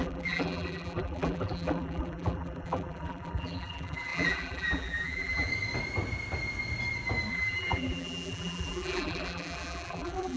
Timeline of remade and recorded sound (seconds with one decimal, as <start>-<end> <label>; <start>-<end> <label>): 0.0-5.5 remade; 5.5-7.3 recorded; 7.3-10.4 remade